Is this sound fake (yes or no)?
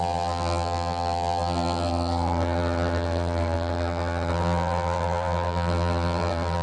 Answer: yes